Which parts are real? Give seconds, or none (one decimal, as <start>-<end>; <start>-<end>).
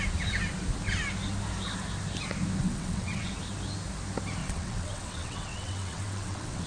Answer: 0.0-2.6; 3.3-4.4